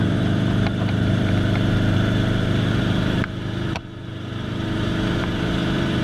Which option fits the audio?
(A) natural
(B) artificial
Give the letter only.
B